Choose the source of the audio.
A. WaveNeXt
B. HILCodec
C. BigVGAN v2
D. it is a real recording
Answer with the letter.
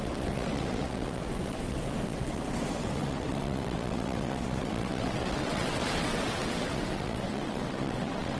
A